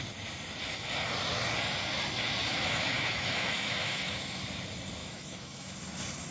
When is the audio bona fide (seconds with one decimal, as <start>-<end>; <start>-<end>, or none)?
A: 0.0-2.4; 4.4-5.0; 5.8-6.3